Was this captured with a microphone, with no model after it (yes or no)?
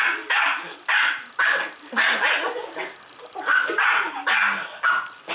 yes